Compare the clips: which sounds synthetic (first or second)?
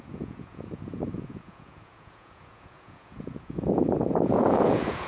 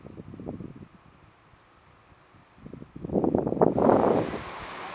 first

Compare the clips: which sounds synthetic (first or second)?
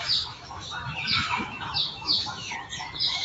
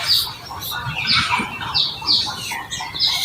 first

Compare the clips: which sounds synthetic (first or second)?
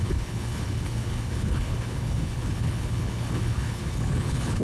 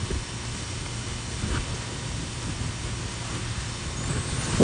first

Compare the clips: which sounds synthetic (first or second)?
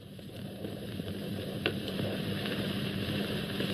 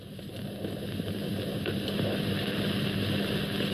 first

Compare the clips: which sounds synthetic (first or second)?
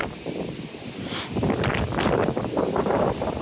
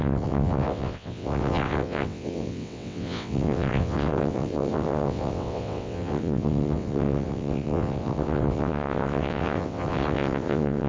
second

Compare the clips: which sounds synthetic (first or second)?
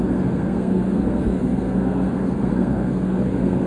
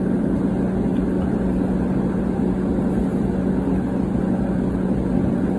first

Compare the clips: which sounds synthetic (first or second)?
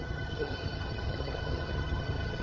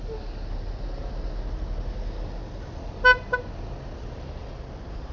first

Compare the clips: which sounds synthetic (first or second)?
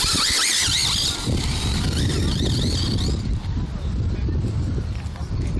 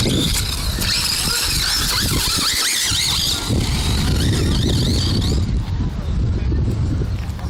first